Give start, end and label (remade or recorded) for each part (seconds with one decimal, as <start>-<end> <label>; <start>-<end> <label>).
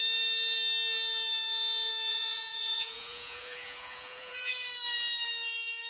0.0-2.1 recorded; 2.1-4.5 remade; 4.5-5.9 recorded